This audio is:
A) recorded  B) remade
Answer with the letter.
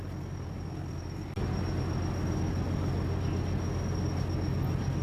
A